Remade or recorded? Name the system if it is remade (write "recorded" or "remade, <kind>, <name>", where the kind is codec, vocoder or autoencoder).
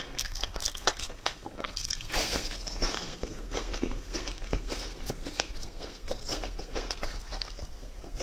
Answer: remade, codec, SNAC